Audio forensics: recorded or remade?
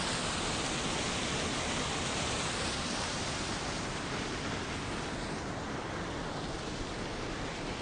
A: recorded